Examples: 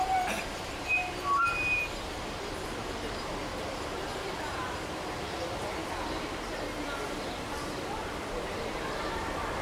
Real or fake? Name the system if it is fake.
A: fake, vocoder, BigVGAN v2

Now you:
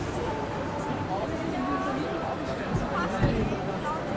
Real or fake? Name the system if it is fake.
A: real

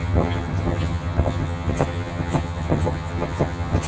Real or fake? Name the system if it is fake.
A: fake, vocoder, HiFi-GAN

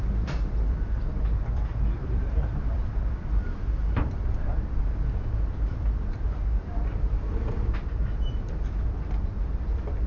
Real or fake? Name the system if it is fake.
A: fake, vocoder, BigVGAN v2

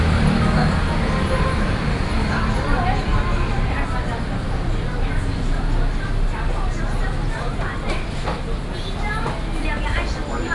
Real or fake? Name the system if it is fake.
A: real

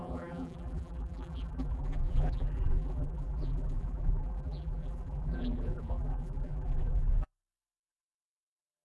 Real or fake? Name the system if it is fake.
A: fake, vocoder, BigVGAN v2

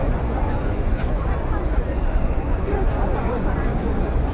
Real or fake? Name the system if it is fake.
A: fake, vocoder, Vocos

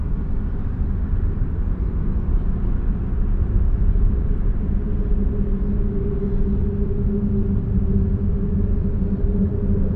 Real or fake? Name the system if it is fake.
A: real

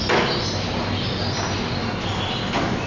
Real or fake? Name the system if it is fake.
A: real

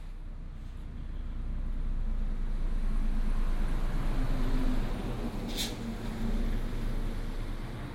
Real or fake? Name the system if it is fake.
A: real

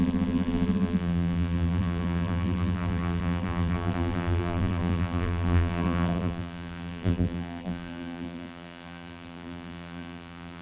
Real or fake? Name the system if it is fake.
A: fake, vocoder, BigVGAN v2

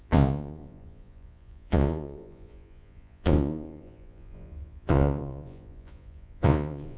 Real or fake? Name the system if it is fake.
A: fake, vocoder, Vocos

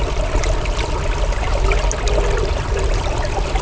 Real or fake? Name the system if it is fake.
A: real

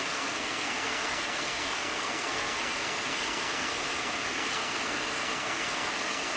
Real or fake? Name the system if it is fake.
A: fake, codec, SNAC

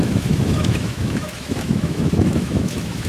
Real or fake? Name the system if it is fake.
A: fake, autoencoder, DAC-VAE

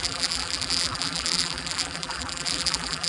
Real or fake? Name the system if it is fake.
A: fake, vocoder, BigVGAN v2